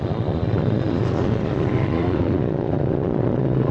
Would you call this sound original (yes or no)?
no